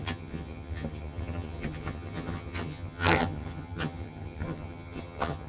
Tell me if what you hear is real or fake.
fake